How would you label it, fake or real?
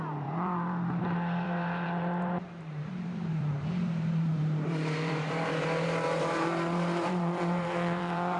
fake